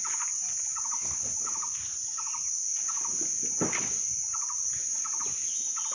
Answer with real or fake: real